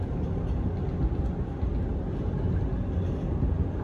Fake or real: real